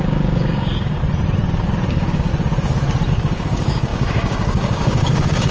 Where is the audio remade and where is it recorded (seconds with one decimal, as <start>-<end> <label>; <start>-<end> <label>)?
0.0-1.0 remade; 1.0-1.9 recorded; 1.9-2.3 remade; 2.3-3.1 recorded; 3.1-5.5 remade